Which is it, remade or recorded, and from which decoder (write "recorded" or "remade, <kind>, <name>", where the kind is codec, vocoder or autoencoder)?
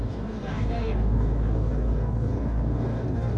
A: remade, codec, DAC